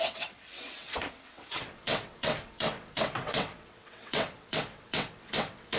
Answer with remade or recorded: remade